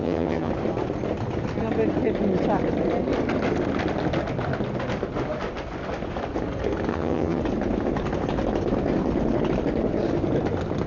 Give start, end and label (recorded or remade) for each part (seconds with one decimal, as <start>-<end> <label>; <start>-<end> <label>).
0.0-0.5 remade; 0.5-6.9 recorded; 6.9-7.4 remade; 7.4-10.9 recorded